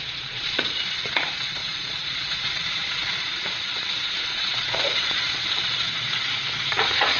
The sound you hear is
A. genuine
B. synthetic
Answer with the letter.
B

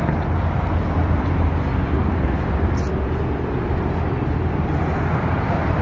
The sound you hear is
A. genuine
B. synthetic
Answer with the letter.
A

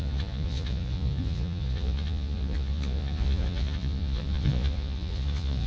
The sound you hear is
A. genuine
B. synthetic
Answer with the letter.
B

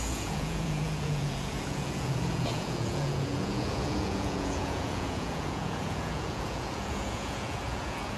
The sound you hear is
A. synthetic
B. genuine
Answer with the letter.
A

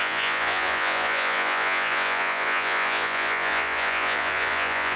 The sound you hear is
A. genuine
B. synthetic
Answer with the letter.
B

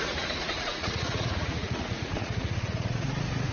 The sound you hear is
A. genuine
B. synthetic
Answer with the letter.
B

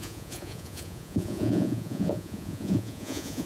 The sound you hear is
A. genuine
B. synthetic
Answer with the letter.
B